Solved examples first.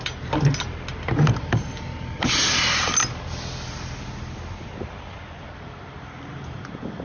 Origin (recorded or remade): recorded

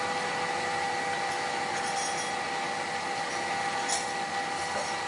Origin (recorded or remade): recorded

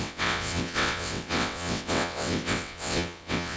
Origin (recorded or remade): remade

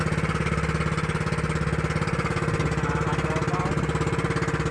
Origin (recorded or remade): recorded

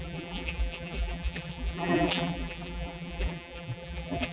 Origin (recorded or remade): remade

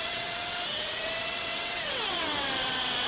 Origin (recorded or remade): remade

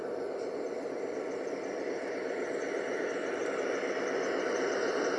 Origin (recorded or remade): recorded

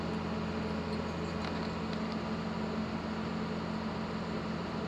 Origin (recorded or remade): recorded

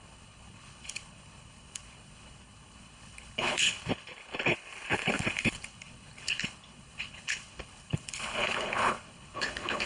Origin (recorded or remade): remade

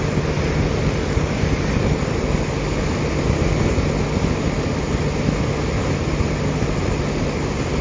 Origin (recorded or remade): recorded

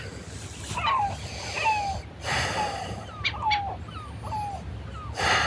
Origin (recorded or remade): recorded